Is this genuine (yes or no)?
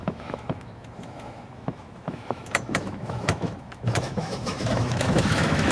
no